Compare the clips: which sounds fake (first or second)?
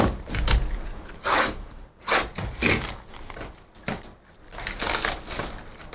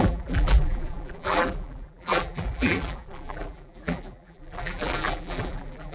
second